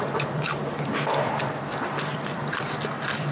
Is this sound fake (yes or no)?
yes